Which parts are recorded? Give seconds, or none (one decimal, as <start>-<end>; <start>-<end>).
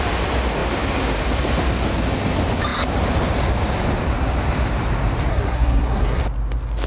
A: 0.0-5.3; 6.2-6.9